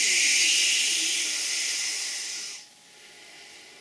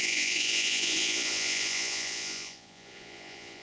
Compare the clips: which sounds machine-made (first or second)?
second